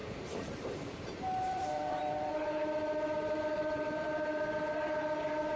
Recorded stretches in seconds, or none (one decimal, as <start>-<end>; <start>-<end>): none

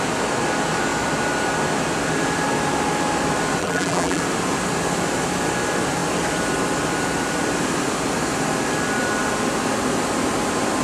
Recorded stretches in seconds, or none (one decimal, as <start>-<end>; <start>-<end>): 0.0-3.6; 4.2-10.8

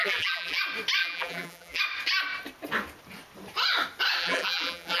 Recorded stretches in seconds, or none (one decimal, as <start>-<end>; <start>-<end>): 0.6-1.0; 1.8-4.2

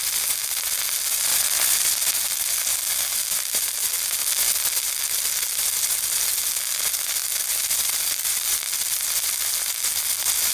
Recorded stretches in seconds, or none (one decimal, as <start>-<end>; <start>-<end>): 0.0-1.3; 2.1-4.2; 4.7-10.5

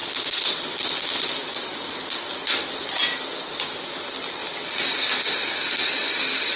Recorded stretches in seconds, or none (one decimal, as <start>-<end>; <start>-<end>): 1.6-3.1; 3.9-4.4; 6.1-6.6

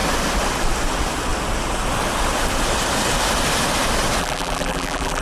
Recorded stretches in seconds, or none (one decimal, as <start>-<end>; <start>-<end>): 0.0-4.2

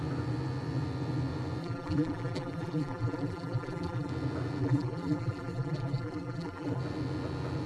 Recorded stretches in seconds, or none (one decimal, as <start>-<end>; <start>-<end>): 0.0-1.6; 4.1-4.6; 6.8-7.7

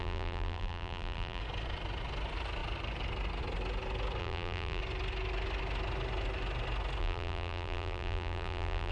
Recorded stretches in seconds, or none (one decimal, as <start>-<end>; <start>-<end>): 1.4-4.2; 4.8-7.0